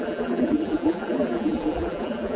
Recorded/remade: remade